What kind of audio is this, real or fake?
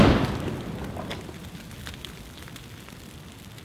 real